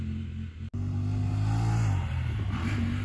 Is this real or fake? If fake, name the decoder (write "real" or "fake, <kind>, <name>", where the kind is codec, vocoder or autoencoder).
real